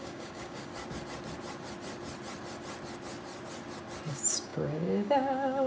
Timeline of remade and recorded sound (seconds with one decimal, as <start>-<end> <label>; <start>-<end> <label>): 0.0-0.7 remade; 0.7-4.1 recorded; 4.1-5.7 remade